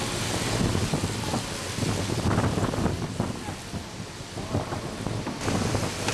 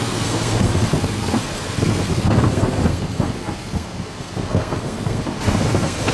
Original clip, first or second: first